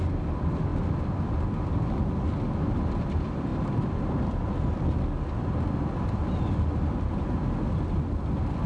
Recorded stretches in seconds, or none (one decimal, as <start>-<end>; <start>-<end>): 0.0-8.7